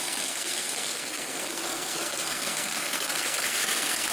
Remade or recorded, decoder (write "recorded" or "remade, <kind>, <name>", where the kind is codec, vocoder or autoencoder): remade, codec, SNAC